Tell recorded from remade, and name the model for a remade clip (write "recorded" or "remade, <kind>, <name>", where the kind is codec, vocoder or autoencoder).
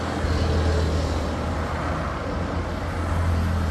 recorded